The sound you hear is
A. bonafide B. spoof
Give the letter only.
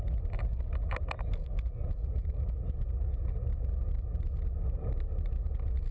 A